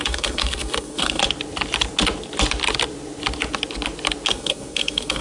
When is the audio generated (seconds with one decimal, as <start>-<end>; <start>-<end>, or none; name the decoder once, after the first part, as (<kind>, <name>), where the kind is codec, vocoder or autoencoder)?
0.0-1.2 (codec, SNAC); 4.3-5.2